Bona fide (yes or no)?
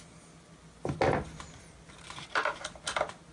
yes